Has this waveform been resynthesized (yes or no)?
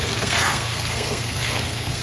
yes